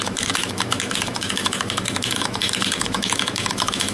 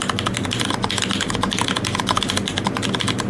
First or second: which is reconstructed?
first